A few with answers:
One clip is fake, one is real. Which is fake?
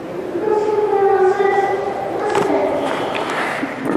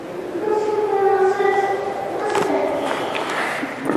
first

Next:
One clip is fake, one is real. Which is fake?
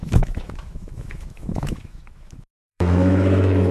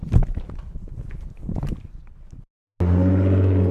first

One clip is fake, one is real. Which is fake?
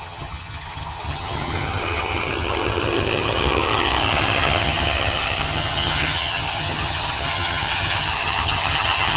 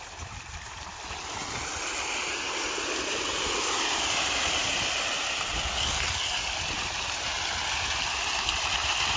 first